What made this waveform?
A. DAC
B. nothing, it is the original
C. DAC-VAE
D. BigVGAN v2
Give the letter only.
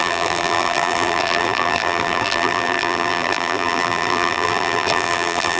D